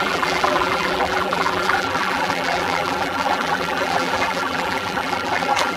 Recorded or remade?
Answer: remade